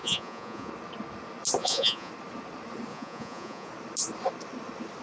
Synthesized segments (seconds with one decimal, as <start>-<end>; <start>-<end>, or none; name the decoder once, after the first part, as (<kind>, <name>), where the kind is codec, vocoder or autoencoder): 0.0-0.7 (vocoder, Vocos); 1.6-2.1; 2.9-3.7